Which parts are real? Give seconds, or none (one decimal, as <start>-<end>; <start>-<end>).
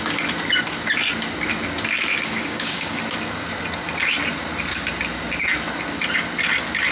0.0-2.1; 3.0-6.9